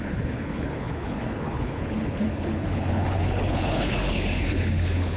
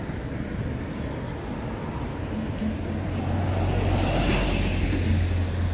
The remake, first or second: first